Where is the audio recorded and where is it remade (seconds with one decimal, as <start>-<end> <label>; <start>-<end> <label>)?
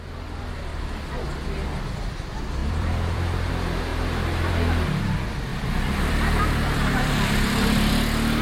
0.0-2.6 recorded; 2.6-3.5 remade; 3.5-5.5 recorded; 5.5-7.9 remade; 7.9-8.4 recorded